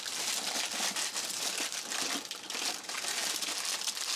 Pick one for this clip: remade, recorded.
recorded